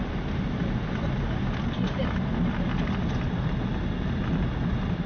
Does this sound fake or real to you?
real